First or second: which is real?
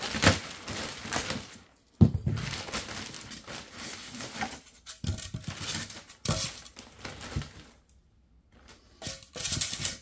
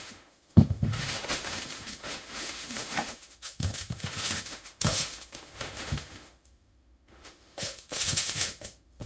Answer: first